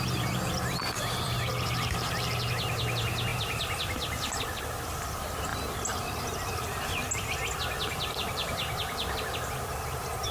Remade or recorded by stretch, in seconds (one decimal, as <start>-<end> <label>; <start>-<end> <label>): 0.0-1.5 remade; 1.5-2.7 recorded; 2.7-5.5 remade; 5.5-8.1 recorded; 8.1-10.3 remade